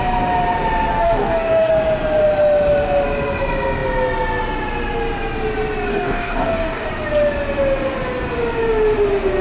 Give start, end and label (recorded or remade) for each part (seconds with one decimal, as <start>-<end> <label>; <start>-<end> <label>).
0.0-0.9 recorded; 0.9-1.7 remade; 1.7-5.9 recorded; 5.9-6.9 remade; 6.9-9.4 recorded